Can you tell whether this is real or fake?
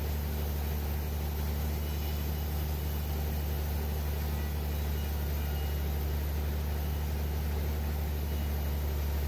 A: real